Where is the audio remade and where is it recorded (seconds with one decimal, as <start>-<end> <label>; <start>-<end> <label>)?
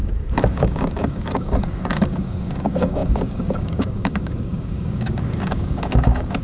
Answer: 0.0-6.4 remade